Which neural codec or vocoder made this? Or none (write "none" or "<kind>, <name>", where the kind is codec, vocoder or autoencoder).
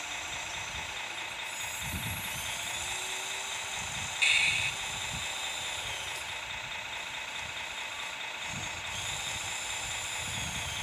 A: none